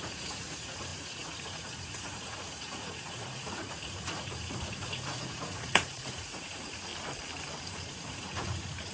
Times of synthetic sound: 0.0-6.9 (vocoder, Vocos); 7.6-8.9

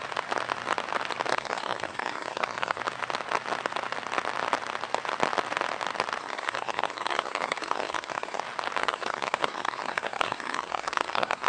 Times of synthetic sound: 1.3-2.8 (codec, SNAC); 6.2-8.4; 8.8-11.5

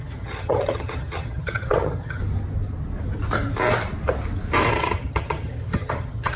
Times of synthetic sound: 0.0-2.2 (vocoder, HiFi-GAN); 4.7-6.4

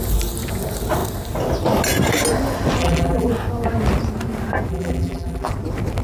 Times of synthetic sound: 2.8-3.3 (vocoder, BigVGAN v2); 4.7-5.5

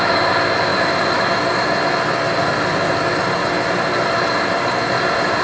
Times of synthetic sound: none